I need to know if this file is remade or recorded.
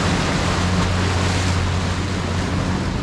recorded